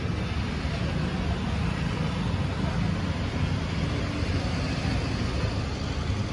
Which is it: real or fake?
real